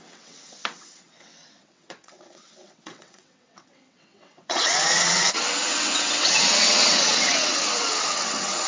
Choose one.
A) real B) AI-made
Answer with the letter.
B